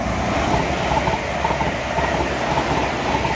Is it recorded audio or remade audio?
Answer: recorded